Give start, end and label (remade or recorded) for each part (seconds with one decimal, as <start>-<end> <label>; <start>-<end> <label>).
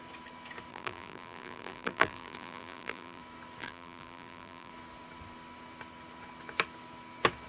0.0-0.7 recorded; 0.7-3.2 remade; 3.2-3.6 recorded; 3.6-4.7 remade; 4.7-7.5 recorded